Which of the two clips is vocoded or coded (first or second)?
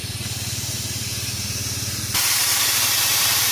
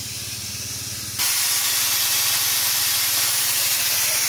first